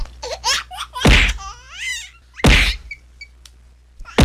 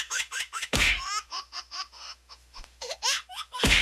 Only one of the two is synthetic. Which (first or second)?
second